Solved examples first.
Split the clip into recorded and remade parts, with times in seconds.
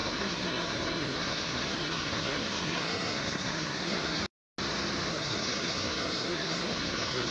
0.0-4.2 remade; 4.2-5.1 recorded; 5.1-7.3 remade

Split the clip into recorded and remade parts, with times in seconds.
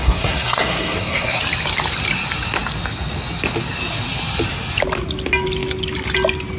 0.0-1.4 remade; 1.4-6.6 recorded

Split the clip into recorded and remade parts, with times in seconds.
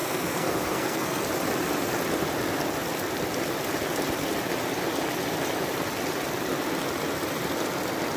0.0-1.2 remade; 1.2-8.2 recorded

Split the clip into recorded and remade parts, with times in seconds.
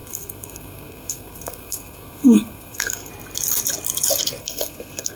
0.0-3.1 remade; 3.1-4.4 recorded; 4.4-5.2 remade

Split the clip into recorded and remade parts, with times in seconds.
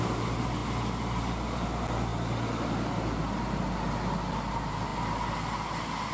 0.0-6.1 recorded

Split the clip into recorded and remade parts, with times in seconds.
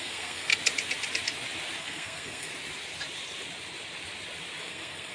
0.0-0.5 remade; 0.5-1.8 recorded; 1.8-2.5 remade; 2.5-4.6 recorded; 4.6-5.1 remade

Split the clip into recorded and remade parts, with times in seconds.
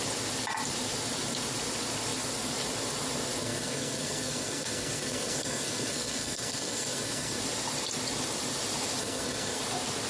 0.0-3.4 recorded; 3.4-7.4 remade; 7.4-9.0 recorded; 9.0-9.6 remade; 9.6-10.1 recorded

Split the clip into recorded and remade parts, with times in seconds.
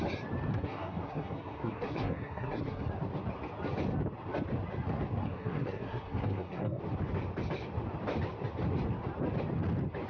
0.0-0.5 recorded; 0.5-2.9 remade; 2.9-5.2 recorded; 5.2-6.8 remade; 6.8-10.1 recorded